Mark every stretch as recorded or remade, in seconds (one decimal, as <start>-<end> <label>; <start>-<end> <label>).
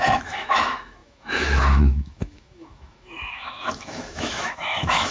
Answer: 0.0-5.1 remade